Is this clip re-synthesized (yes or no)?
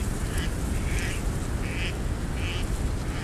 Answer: no